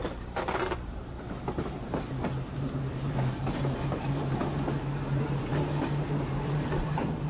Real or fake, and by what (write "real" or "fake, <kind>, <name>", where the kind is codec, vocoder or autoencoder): fake, vocoder, BigVGAN v2